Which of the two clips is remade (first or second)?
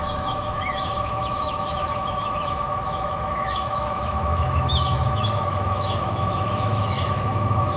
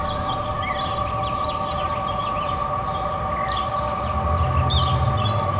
first